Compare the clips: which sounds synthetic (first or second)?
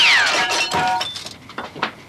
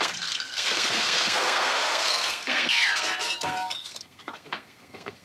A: second